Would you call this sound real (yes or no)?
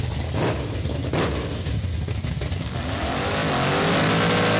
yes